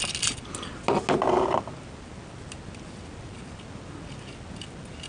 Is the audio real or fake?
real